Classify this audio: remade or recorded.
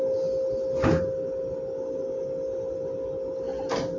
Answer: recorded